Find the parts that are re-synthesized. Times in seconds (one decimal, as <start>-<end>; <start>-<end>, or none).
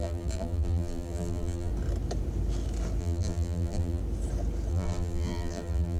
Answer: 0.0-1.7; 3.0-4.0; 4.7-6.0